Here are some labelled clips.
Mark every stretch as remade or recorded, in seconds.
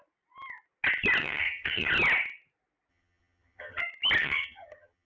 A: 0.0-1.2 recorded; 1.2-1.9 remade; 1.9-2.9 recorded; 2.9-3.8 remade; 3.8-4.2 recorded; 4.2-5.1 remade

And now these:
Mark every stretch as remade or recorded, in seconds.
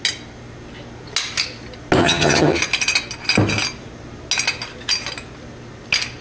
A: 0.0-2.0 recorded; 2.0-2.6 remade; 2.6-6.2 recorded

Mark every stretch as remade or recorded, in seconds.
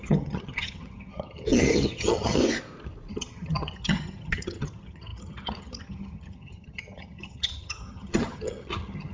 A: 0.0-2.4 remade; 2.4-3.1 recorded; 3.1-9.1 remade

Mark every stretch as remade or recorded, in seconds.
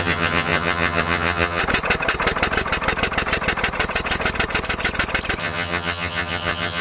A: 0.0-1.6 remade; 1.6-5.4 recorded; 5.4-6.8 remade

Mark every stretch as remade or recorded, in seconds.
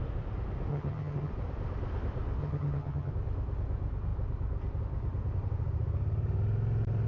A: 0.0-0.7 recorded; 0.7-1.3 remade; 1.3-2.4 recorded; 2.4-3.1 remade; 3.1-7.1 recorded